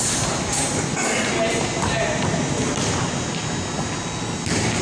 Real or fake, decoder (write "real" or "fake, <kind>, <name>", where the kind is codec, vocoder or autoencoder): real